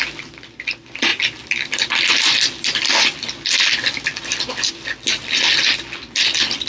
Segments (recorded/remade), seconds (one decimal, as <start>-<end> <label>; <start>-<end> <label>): 0.0-6.7 recorded